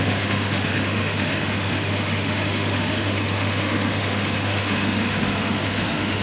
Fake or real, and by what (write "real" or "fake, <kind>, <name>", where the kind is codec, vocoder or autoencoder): fake, autoencoder, DAC-VAE